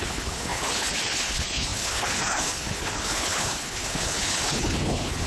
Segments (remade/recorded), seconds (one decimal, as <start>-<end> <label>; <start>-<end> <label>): 0.0-5.3 remade